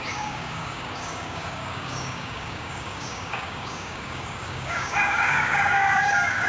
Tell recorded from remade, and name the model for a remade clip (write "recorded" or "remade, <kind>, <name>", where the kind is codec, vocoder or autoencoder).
remade, codec, DAC